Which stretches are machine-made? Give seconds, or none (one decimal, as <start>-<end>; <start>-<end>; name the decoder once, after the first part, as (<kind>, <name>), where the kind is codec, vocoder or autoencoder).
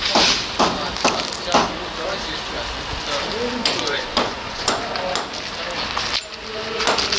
3.6-4.8 (vocoder, Vocos)